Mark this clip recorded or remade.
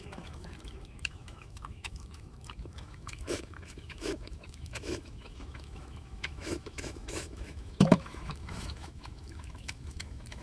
remade